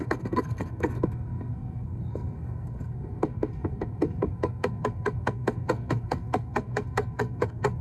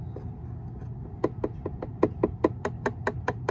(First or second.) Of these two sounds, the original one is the second